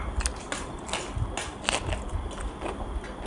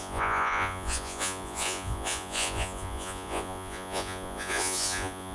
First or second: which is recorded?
first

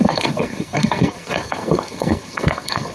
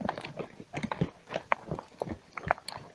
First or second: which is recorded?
second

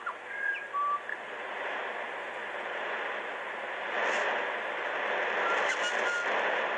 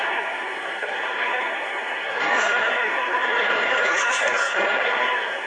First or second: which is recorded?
first